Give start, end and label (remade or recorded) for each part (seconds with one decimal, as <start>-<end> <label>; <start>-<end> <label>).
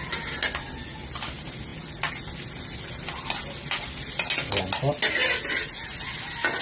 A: 0.0-6.6 recorded